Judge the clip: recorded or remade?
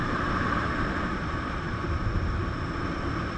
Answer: remade